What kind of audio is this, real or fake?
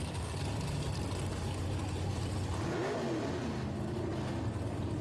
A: real